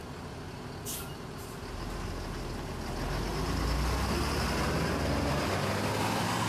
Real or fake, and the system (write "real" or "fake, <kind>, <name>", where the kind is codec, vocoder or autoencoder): real